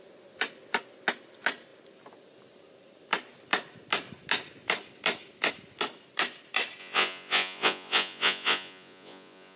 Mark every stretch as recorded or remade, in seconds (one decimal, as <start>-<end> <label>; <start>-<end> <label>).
0.0-6.8 recorded; 6.8-9.6 remade